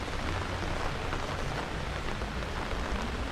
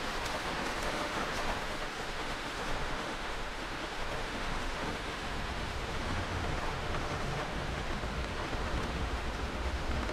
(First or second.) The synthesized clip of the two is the second